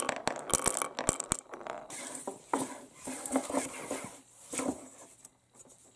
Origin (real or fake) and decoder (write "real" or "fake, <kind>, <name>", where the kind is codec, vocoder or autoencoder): real